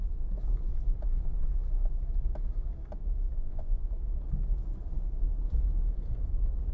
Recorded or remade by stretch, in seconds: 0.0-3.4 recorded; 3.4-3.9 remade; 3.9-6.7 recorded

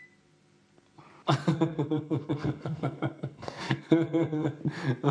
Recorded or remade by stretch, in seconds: 0.0-1.5 recorded; 1.5-4.6 remade; 4.6-5.1 recorded

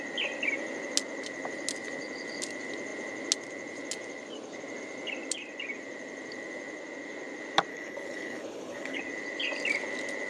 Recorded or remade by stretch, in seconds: 0.0-7.7 recorded; 7.7-9.0 remade; 9.0-10.3 recorded

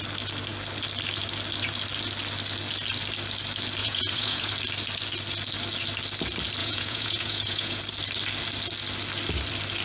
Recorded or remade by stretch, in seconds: 0.0-3.8 recorded; 3.8-4.5 remade; 4.5-6.6 recorded; 6.6-7.8 remade; 7.8-9.8 recorded

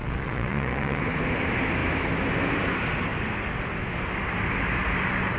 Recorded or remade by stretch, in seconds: 0.0-1.0 remade; 1.0-5.4 recorded

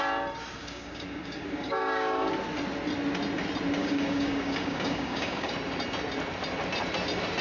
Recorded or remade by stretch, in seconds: 0.0-0.6 recorded; 0.6-2.3 remade; 2.3-3.8 recorded; 3.8-5.5 remade; 5.5-7.4 recorded

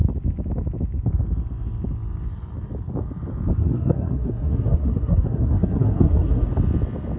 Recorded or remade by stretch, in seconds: 0.0-3.6 recorded; 3.6-6.5 remade; 6.5-7.2 recorded

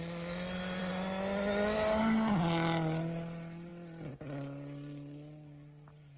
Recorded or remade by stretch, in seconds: 0.0-6.2 recorded